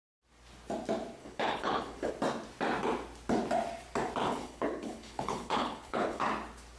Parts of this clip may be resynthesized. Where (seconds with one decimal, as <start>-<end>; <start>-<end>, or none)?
1.2-2.1; 4.2-6.3